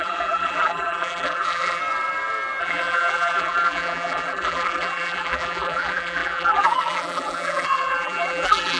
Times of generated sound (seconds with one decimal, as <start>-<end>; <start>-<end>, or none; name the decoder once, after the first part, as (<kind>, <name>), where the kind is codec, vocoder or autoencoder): 0.0-1.8 (vocoder, BigVGAN v2); 2.6-8.8